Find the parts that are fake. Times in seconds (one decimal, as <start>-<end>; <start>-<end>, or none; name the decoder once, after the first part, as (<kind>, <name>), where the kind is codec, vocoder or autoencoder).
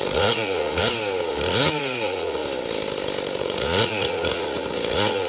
0.0-0.8 (vocoder, Vocos); 1.3-2.4; 3.4-5.3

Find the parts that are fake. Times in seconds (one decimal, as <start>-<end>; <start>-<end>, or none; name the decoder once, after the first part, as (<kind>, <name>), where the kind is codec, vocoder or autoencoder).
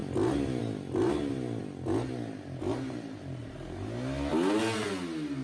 none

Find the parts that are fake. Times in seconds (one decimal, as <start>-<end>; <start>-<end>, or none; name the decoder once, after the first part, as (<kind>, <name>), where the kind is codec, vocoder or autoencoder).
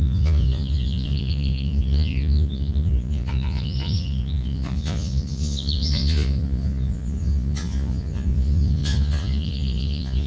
0.0-10.3 (vocoder, Vocos)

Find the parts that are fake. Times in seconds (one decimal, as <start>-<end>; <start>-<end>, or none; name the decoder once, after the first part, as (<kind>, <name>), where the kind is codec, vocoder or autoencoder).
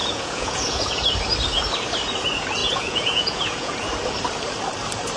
0.0-1.1 (vocoder, Vocos); 2.6-3.8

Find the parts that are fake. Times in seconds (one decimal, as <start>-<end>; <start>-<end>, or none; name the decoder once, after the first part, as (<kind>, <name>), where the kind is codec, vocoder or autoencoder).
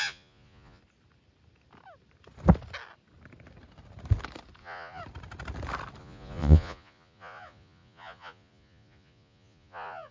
0.0-0.8 (vocoder, Vocos); 4.6-5.0; 6.0-10.1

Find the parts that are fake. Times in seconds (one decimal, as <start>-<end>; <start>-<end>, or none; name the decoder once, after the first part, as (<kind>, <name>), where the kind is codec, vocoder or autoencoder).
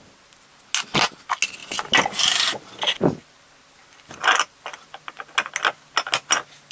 none